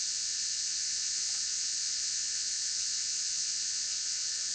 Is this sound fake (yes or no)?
yes